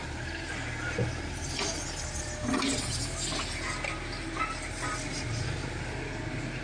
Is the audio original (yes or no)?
yes